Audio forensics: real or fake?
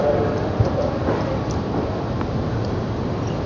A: real